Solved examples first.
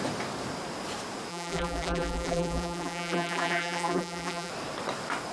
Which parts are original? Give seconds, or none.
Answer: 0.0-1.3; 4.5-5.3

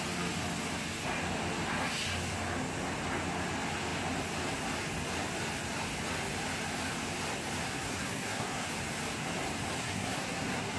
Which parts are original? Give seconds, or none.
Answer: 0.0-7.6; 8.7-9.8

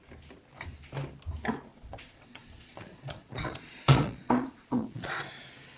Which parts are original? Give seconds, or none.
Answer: 0.0-1.7; 5.2-5.8

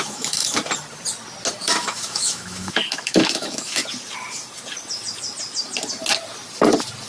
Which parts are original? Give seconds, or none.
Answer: 0.6-1.6; 3.8-7.1

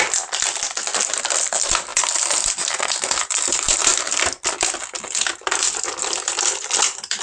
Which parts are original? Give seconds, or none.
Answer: 0.0-7.2

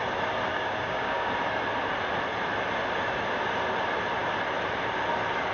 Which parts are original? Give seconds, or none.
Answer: 0.0-0.5; 1.3-5.5